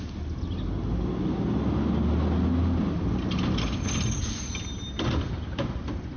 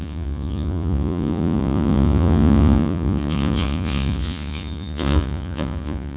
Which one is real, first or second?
first